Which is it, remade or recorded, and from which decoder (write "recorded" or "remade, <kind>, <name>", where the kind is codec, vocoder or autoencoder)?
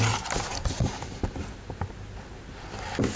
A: recorded